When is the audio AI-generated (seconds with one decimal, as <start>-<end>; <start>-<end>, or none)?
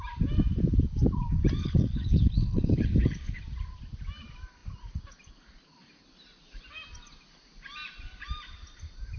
1.6-3.4